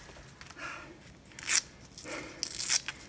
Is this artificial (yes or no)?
no